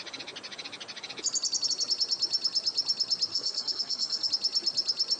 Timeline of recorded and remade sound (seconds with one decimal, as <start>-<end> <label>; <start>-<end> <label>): 0.0-3.3 recorded; 3.3-4.3 remade; 4.3-5.2 recorded